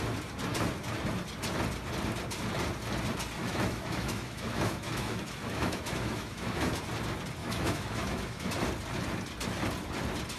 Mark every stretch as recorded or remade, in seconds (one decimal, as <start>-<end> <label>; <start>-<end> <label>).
0.0-3.4 recorded; 3.4-6.8 remade; 6.8-7.4 recorded; 7.4-8.5 remade; 8.5-10.4 recorded